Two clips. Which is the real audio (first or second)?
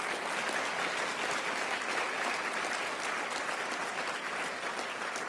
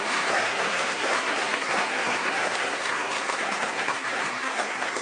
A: first